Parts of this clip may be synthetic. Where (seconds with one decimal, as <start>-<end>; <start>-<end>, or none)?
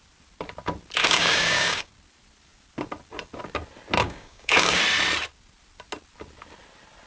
1.0-1.9; 4.0-4.8